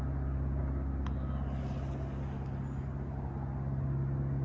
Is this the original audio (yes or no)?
yes